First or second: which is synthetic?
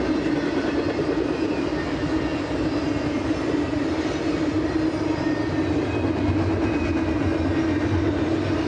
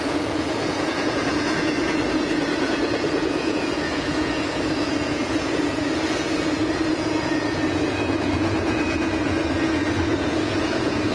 second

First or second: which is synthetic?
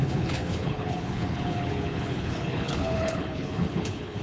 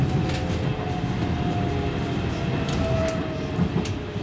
first